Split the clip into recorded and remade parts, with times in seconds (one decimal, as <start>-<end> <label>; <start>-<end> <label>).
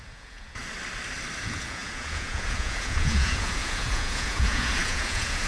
0.0-0.6 remade; 0.6-1.4 recorded; 1.4-5.5 remade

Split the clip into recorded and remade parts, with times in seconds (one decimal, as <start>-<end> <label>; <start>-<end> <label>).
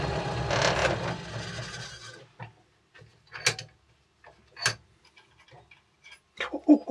0.0-6.9 recorded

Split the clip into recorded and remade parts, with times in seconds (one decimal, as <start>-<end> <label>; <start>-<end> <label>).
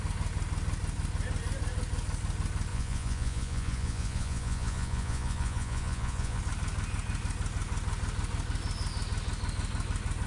0.0-2.7 recorded; 2.7-6.4 remade; 6.4-10.3 recorded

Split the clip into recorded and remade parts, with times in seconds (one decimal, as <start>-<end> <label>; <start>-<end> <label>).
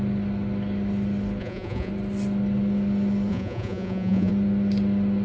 0.0-1.4 recorded; 1.4-1.9 remade; 1.9-3.3 recorded; 3.3-4.3 remade; 4.3-5.2 recorded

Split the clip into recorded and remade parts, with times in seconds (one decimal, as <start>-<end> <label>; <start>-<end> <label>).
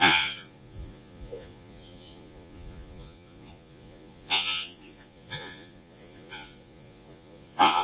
0.0-7.8 remade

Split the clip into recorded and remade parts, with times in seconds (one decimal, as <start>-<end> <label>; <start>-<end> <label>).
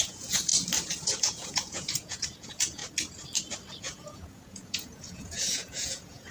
0.0-0.5 remade; 0.5-1.2 recorded; 1.2-2.8 remade; 2.8-3.8 recorded; 3.8-6.3 remade